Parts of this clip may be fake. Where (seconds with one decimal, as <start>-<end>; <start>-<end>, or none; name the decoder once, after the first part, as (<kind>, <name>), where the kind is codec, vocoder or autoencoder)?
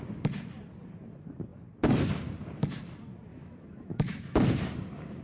3.3-4.4 (autoencoder, DAC-VAE)